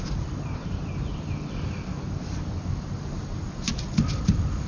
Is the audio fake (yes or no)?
no